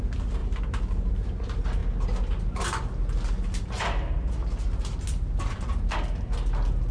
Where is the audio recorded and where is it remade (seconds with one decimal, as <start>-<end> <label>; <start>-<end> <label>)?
0.0-6.9 recorded